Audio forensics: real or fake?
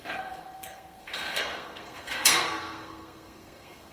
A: fake